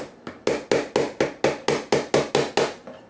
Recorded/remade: recorded